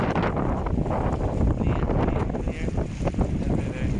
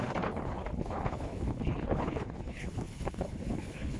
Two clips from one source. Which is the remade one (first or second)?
second